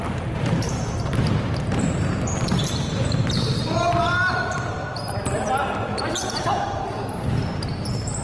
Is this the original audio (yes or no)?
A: no